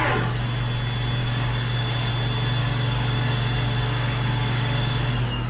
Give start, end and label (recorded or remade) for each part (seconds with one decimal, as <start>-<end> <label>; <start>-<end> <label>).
0.0-1.2 recorded; 1.2-2.1 remade; 2.1-2.6 recorded; 2.6-5.1 remade; 5.1-5.5 recorded